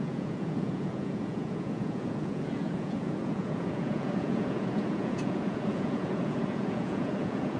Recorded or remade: remade